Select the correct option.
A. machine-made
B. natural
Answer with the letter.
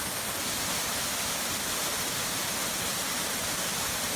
B